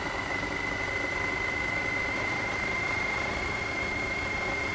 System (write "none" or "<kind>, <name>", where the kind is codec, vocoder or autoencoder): none